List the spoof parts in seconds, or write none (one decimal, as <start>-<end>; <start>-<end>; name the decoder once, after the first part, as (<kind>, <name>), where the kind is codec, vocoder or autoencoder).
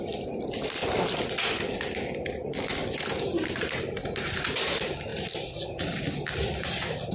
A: 0.8-1.8 (vocoder, BigVGAN v2)